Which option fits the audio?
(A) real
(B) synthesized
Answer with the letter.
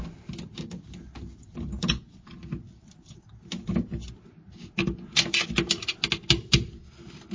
A